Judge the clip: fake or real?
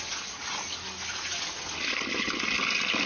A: real